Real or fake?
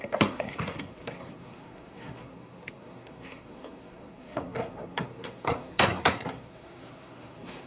fake